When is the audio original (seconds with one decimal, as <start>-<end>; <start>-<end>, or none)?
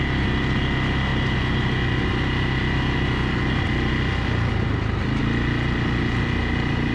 0.0-6.9